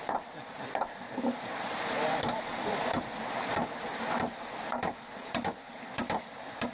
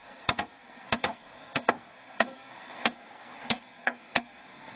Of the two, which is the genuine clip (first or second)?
first